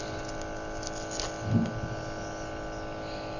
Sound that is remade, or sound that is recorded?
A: recorded